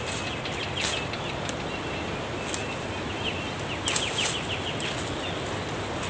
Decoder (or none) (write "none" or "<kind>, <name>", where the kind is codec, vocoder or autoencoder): none